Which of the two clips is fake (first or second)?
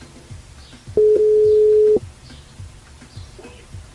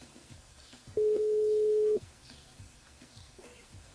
second